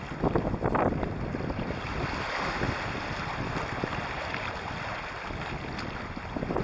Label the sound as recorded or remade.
recorded